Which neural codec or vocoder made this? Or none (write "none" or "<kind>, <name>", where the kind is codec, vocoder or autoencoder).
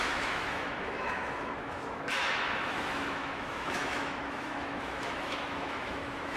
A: autoencoder, DAC-VAE